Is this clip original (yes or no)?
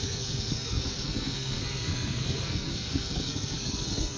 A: no